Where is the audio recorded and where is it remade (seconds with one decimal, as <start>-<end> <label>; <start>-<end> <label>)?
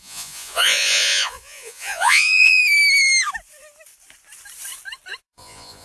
0.0-2.6 remade; 2.6-5.2 recorded; 5.2-5.8 remade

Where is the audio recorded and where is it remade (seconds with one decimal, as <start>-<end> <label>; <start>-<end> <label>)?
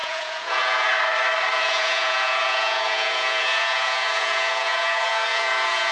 0.0-0.9 remade; 0.9-1.5 recorded; 1.5-5.9 remade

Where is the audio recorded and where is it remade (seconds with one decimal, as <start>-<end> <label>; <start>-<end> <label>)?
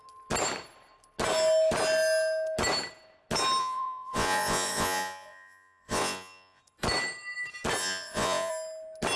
0.0-3.6 recorded; 3.6-6.6 remade; 6.6-7.8 recorded; 7.8-8.5 remade; 8.5-9.2 recorded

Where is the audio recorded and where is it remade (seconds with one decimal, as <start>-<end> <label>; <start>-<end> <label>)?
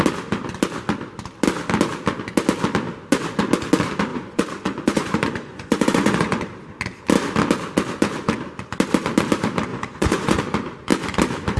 0.0-4.1 recorded; 4.1-6.4 remade; 6.4-9.7 recorded; 9.7-10.4 remade; 10.4-11.6 recorded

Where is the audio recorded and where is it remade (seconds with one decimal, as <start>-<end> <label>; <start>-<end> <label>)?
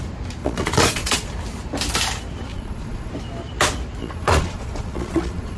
0.0-0.4 recorded; 0.4-1.3 remade; 1.3-2.5 recorded; 2.5-3.1 remade; 3.1-4.0 recorded; 4.0-5.6 remade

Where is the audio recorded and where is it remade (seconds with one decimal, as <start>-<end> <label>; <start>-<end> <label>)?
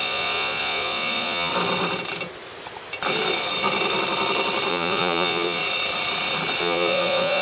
0.0-1.5 remade; 1.5-4.7 recorded; 4.7-5.6 remade; 5.6-6.6 recorded; 6.6-7.4 remade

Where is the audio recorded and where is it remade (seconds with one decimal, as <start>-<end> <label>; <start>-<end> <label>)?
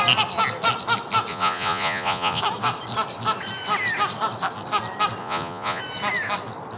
0.0-1.3 recorded; 1.3-2.4 remade; 2.4-5.2 recorded; 5.2-5.8 remade; 5.8-6.8 recorded